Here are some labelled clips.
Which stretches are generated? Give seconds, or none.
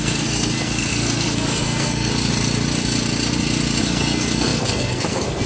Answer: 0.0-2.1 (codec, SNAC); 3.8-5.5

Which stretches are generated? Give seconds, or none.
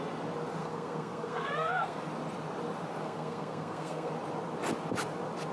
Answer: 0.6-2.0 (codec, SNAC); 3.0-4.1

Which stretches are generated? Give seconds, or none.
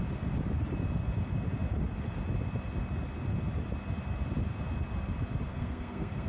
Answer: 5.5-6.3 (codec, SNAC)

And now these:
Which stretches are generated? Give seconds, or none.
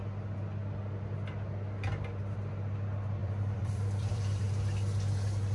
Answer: 3.2-4.5 (vocoder, BigVGAN v2)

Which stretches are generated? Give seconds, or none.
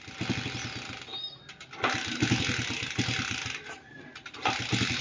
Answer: none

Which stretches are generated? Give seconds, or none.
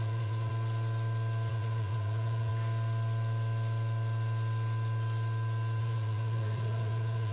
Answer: 0.0-0.5 (vocoder, Vocos); 1.5-2.5; 5.8-7.3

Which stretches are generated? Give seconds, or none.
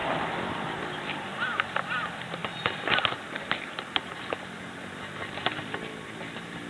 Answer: none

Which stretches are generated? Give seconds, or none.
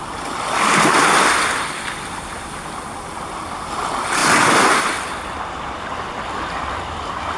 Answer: none